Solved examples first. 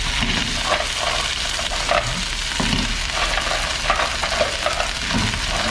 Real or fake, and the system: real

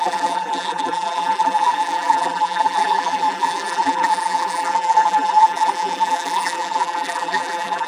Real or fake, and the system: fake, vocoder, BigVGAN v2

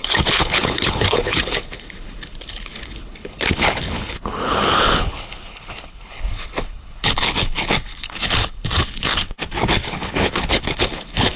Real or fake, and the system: fake, codec, HILCodec